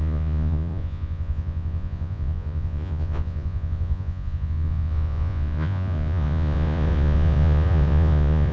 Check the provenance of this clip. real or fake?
fake